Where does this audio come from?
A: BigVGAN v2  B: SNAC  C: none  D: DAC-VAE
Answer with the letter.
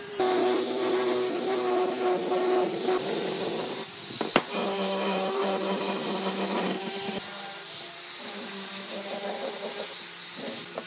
A